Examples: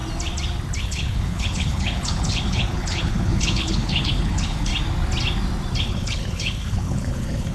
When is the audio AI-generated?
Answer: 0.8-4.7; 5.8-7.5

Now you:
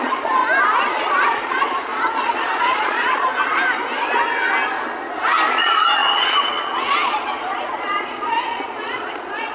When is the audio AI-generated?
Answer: 0.0-0.4; 0.9-3.3; 5.5-9.5

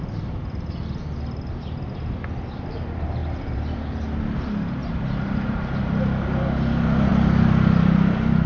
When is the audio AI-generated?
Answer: 3.2-3.8; 7.1-8.5